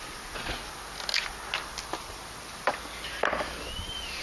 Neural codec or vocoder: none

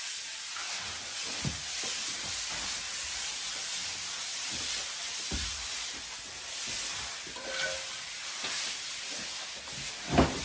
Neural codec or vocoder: none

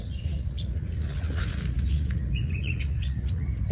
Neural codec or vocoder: vocoder, Vocos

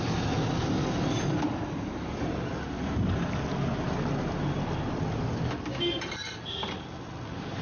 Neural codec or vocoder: none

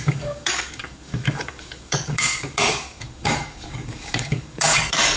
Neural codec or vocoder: codec, DAC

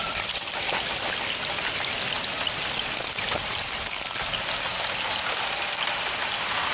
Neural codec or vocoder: none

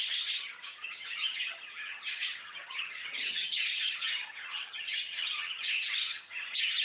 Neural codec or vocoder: vocoder, HiFi-GAN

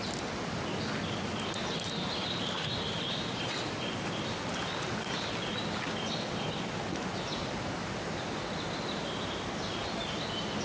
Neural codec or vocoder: none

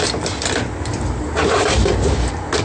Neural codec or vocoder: none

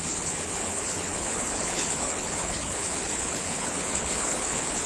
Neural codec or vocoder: codec, HILCodec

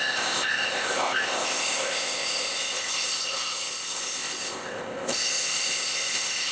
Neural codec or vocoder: codec, ZipCodec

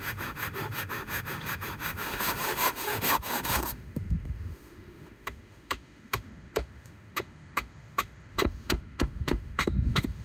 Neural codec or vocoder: autoencoder, DAC-VAE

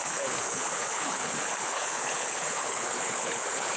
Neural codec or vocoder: codec, HILCodec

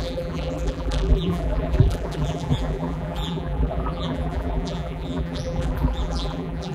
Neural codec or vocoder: vocoder, BigVGAN v2